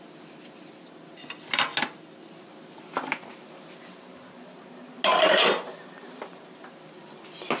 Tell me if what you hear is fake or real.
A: real